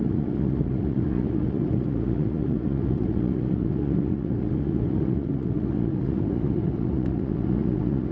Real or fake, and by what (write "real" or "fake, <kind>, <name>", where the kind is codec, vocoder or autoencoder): fake, vocoder, Vocos